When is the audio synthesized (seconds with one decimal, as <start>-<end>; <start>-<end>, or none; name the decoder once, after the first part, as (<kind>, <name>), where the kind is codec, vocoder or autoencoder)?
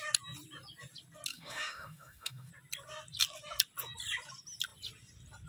1.3-2.5 (autoencoder, DAC-VAE)